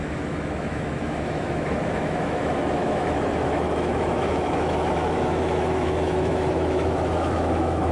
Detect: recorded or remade remade